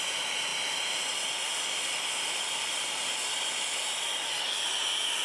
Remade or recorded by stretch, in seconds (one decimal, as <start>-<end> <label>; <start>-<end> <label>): 0.0-5.2 recorded